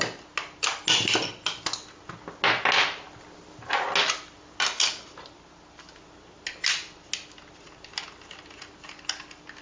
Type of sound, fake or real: real